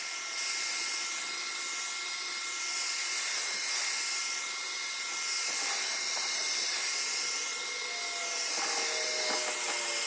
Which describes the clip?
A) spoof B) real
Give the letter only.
B